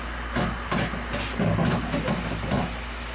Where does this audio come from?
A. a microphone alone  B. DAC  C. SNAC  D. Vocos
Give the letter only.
A